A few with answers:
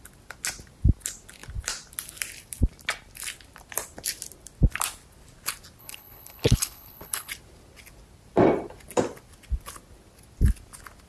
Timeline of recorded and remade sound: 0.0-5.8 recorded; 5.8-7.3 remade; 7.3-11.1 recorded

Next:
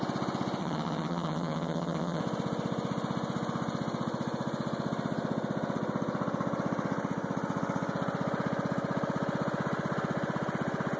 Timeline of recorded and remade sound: 0.0-0.6 recorded; 0.6-2.2 remade; 2.2-11.0 recorded

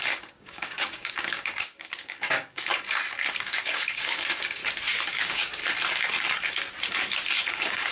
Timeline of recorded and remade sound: 0.0-2.7 remade; 2.7-3.4 recorded; 3.4-4.6 remade; 4.6-5.1 recorded; 5.1-5.6 remade; 5.6-7.5 recorded; 7.5-7.9 remade

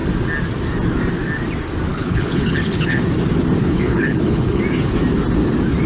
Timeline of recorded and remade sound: 0.0-1.9 recorded; 1.9-3.0 remade; 3.0-3.6 recorded; 3.6-4.6 remade; 4.6-5.9 recorded

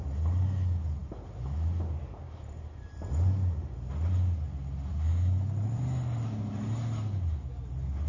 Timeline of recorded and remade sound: 0.0-8.1 recorded

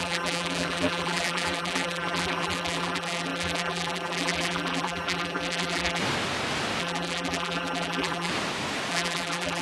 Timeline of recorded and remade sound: 0.0-6.0 remade; 6.0-6.8 recorded; 6.8-8.3 remade; 8.3-8.9 recorded; 8.9-9.6 remade